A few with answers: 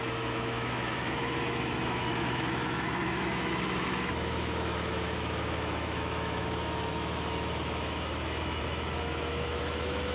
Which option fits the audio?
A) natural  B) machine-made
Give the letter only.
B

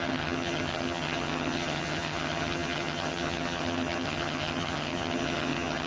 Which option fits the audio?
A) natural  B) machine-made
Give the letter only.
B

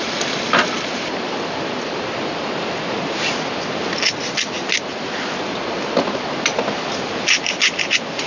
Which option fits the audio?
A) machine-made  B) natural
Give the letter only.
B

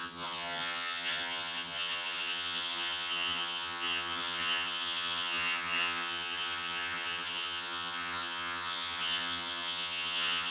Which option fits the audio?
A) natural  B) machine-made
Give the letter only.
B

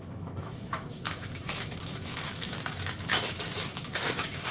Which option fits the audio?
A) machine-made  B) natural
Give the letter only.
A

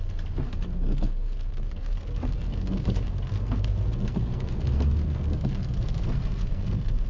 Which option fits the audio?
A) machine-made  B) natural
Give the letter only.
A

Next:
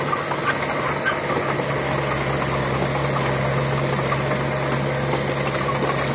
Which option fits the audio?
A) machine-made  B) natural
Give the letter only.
B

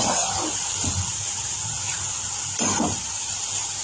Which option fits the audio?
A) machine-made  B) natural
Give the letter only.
B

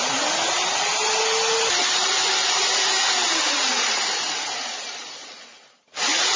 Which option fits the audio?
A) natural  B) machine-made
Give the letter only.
A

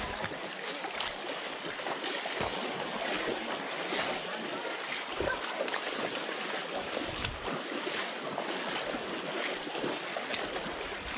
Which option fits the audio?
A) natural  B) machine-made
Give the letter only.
A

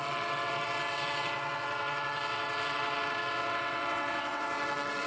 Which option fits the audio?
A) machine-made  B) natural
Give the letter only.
A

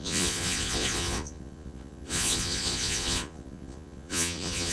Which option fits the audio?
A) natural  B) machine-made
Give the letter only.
B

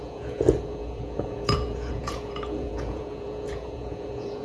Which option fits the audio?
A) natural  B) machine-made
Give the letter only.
B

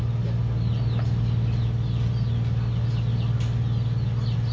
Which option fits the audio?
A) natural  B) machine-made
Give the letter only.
A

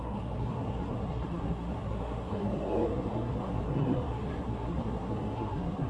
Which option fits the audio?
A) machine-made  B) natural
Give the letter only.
A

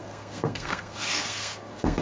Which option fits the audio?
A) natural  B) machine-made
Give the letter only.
B